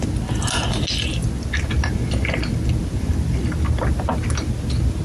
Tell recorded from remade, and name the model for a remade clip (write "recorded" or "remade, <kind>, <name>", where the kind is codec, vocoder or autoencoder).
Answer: recorded